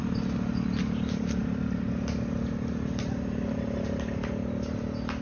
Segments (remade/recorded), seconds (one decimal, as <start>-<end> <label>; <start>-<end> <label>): 0.0-5.2 recorded